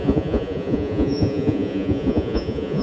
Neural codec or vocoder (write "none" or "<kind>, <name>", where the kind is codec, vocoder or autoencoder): vocoder, Vocos